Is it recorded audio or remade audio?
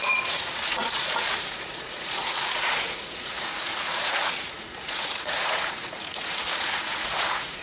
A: remade